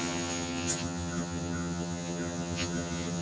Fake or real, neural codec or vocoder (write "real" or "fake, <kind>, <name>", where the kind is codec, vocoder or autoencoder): fake, vocoder, HiFi-GAN